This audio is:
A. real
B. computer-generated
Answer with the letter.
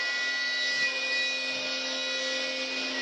A